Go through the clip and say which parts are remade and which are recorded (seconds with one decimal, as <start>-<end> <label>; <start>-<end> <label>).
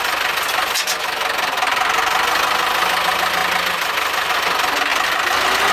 0.0-5.7 recorded